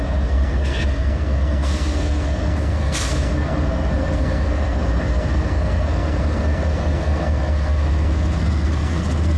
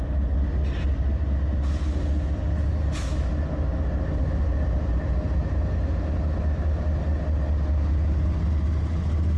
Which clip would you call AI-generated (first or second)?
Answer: first